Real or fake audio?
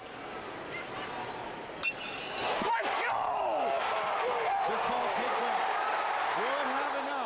real